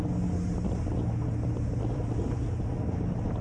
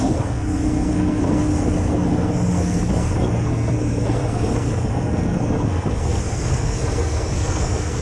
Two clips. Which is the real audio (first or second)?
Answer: first